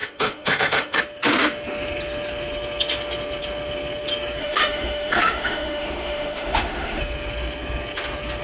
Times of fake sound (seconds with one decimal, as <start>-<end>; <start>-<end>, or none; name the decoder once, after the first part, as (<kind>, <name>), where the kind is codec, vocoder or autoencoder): 0.0-1.0 (autoencoder, DAC-VAE); 4.4-7.0